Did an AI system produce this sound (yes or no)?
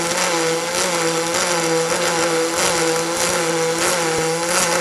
no